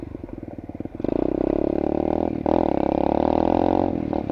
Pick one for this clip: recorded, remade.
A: recorded